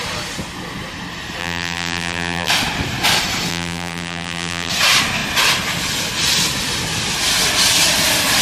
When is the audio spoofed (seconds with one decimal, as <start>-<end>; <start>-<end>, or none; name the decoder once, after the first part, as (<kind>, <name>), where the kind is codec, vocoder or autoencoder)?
1.4-2.5 (vocoder, BigVGAN v2); 3.5-4.7